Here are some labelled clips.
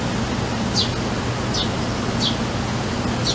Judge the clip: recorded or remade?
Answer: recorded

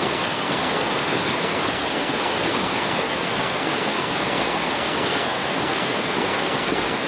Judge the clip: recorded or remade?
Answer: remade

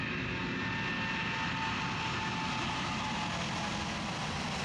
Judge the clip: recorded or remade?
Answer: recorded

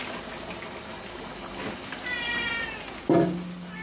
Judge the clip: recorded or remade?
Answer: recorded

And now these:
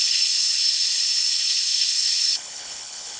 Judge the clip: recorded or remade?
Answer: remade